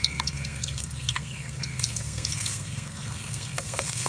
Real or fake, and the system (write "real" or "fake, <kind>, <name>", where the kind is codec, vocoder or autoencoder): fake, codec, SNAC